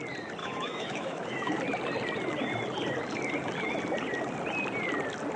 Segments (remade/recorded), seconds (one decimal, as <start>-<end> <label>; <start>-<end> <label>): 0.0-0.4 recorded; 0.4-1.6 remade; 1.6-5.4 recorded